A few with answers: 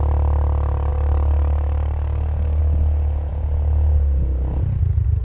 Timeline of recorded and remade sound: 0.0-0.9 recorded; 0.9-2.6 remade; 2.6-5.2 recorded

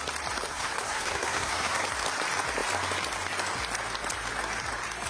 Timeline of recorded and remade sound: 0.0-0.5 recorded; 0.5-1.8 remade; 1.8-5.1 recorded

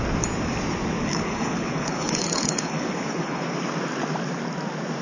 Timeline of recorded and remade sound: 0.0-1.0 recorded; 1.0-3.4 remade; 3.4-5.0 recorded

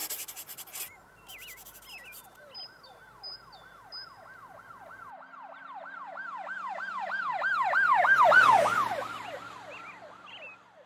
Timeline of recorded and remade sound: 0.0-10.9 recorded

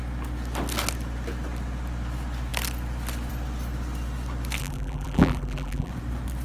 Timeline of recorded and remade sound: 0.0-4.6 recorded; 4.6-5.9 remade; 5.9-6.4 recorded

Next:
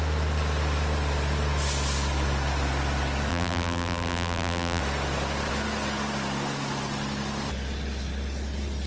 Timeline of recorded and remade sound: 0.0-3.3 recorded; 3.3-4.8 remade; 4.8-8.9 recorded

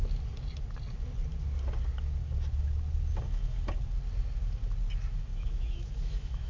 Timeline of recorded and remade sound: 0.0-5.3 recorded; 5.3-6.5 remade